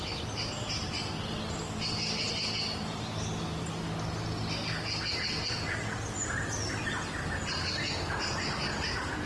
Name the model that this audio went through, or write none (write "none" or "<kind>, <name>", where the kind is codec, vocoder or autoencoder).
none